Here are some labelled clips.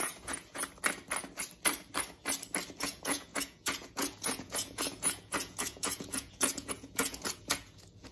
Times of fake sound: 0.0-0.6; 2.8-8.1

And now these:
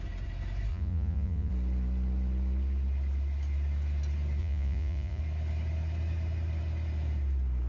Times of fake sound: 0.7-1.5; 4.4-5.2